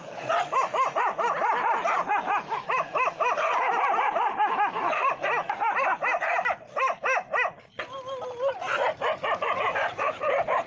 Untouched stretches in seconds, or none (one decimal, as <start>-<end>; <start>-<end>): 0.0-10.7